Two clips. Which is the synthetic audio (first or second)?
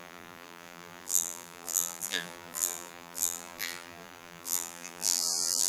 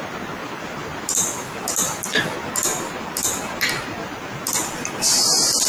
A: first